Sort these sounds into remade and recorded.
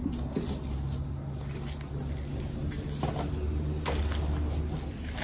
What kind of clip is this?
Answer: recorded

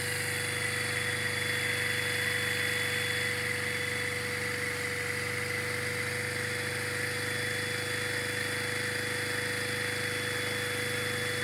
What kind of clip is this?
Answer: recorded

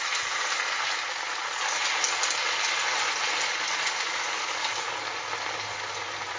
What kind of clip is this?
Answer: recorded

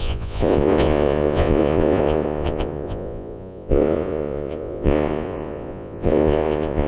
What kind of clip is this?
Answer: remade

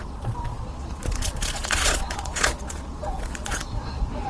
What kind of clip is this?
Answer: remade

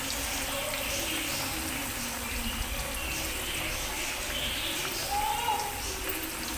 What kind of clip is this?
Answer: recorded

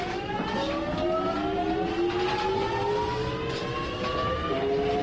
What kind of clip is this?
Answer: recorded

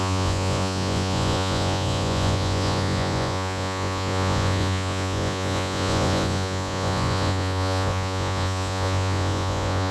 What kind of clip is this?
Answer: remade